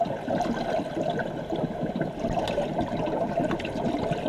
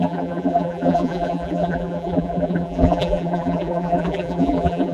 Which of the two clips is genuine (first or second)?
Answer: first